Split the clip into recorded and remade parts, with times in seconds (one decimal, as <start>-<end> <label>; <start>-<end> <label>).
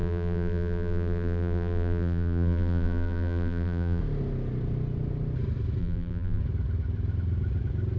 0.0-4.0 remade; 4.0-5.8 recorded; 5.8-6.4 remade; 6.4-8.0 recorded